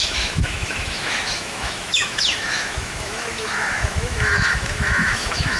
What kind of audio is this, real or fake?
fake